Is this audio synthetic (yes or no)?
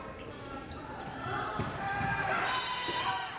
yes